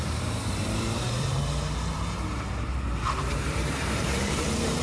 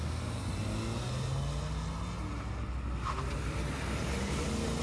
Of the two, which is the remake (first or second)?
first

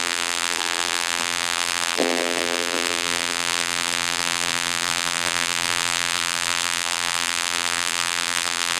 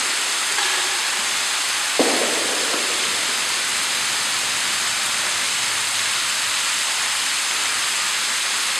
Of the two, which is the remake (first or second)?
first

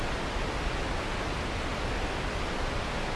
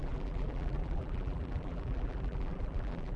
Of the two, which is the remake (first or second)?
second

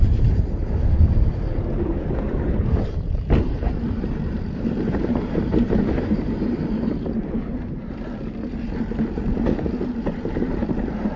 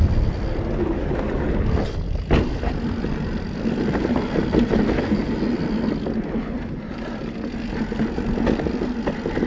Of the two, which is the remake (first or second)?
first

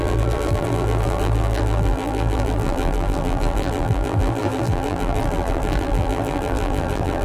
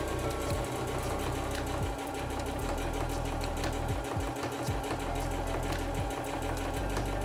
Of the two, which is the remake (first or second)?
first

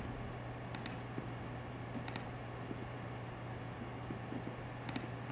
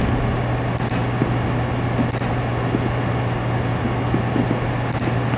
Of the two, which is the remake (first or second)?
first